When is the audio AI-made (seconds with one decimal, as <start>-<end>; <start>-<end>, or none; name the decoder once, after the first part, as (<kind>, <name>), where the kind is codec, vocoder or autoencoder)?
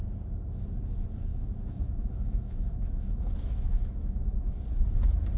1.3-4.5 (autoencoder, DAC-VAE)